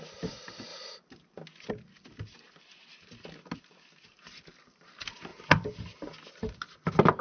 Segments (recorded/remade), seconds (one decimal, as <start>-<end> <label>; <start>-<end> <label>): 0.0-7.2 recorded

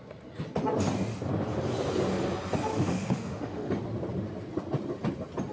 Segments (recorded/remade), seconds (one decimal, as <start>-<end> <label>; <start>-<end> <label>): 0.0-2.7 recorded; 2.7-3.7 remade; 3.7-5.5 recorded

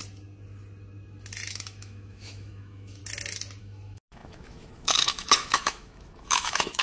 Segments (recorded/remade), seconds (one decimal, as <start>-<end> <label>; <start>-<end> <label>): 0.0-1.5 recorded; 1.5-3.0 remade; 3.0-3.6 recorded; 3.6-6.8 remade

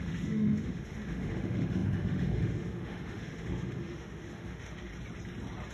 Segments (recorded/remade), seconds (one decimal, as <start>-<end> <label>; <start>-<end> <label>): 0.0-4.9 remade; 4.9-5.7 recorded

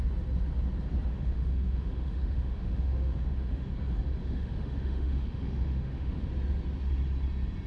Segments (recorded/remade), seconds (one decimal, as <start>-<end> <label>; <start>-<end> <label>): 0.0-1.1 recorded; 1.1-3.7 remade; 3.7-4.2 recorded; 4.2-6.3 remade; 6.3-7.7 recorded

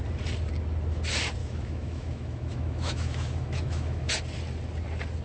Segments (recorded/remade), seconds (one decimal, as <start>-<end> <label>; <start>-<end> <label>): 0.0-1.4 recorded; 1.4-4.1 remade; 4.1-5.2 recorded

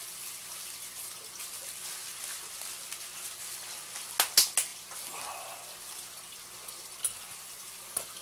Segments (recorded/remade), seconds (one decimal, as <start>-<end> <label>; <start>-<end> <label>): 0.0-8.2 recorded

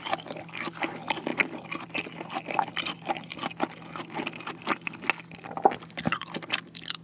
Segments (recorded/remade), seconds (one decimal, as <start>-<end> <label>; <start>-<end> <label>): 0.0-7.0 recorded